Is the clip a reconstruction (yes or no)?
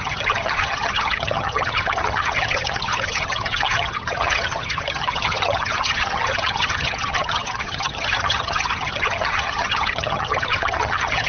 yes